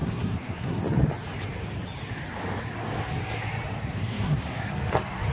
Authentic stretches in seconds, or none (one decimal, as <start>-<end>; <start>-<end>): 0.8-3.8; 4.7-5.3